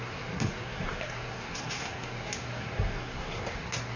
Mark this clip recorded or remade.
remade